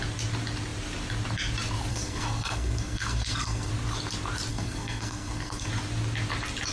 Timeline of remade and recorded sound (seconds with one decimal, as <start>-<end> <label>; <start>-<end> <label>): 0.0-1.9 recorded; 1.9-3.7 remade; 3.7-4.5 recorded; 4.5-5.7 remade; 5.7-6.7 recorded